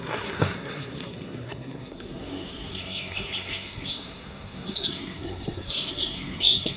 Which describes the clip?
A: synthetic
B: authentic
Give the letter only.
A